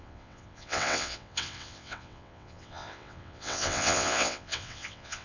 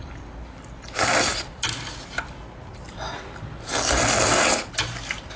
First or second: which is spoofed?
first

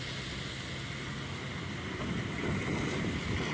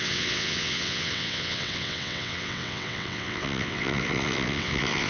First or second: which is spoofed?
second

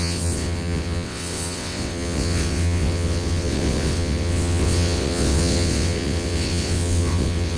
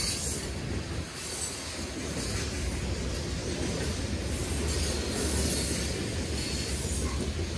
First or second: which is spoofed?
first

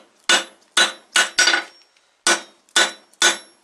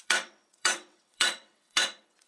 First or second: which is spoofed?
second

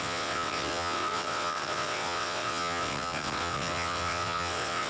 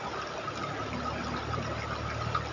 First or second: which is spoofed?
first